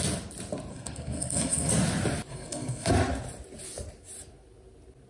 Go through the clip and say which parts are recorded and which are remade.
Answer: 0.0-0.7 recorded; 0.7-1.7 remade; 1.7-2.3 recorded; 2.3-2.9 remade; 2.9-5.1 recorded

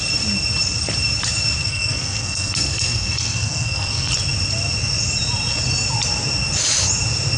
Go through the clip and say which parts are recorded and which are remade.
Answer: 0.0-1.6 recorded; 1.6-4.1 remade; 4.1-7.4 recorded

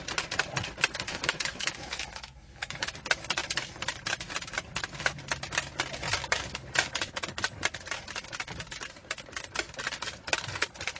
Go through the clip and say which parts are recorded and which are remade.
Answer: 0.0-1.1 recorded; 1.1-2.9 remade; 2.9-11.0 recorded

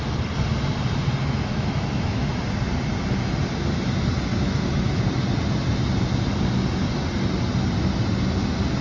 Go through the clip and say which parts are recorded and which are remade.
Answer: 0.0-1.2 recorded; 1.2-2.4 remade; 2.4-4.3 recorded; 4.3-5.0 remade; 5.0-8.8 recorded

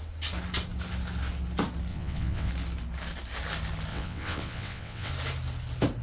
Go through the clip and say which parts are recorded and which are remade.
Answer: 0.0-1.9 recorded; 1.9-2.5 remade; 2.5-3.9 recorded; 3.9-5.1 remade; 5.1-6.0 recorded

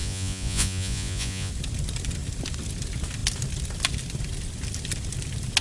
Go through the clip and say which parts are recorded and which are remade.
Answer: 0.0-1.5 remade; 1.5-5.6 recorded

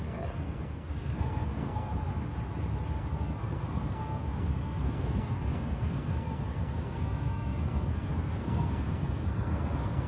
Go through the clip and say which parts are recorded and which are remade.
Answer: 0.0-2.1 remade; 2.1-2.9 recorded; 2.9-10.1 remade

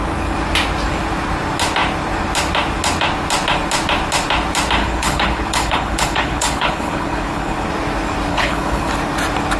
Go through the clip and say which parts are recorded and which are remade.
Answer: 0.0-4.8 recorded; 4.8-7.7 remade; 7.7-8.3 recorded; 8.3-8.9 remade; 8.9-9.6 recorded